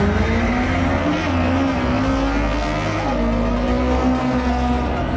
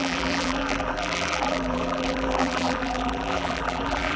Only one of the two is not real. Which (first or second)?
second